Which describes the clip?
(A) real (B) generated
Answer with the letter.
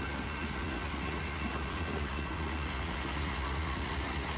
B